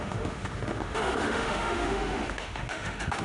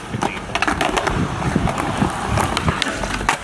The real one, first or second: second